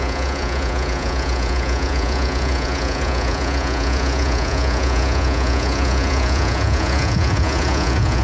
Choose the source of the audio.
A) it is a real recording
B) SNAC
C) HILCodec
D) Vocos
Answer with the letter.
D